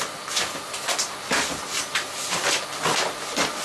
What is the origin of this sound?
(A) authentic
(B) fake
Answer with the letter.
A